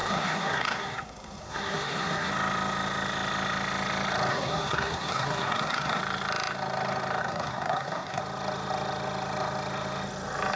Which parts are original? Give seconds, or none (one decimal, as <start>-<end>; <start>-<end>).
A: 2.3-4.3; 6.0-7.2; 8.2-10.6